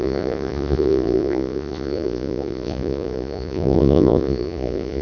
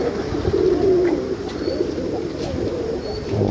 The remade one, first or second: first